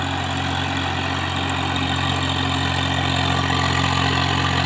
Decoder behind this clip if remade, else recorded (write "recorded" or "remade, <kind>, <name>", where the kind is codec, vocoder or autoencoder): recorded